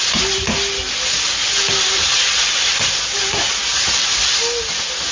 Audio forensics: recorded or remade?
recorded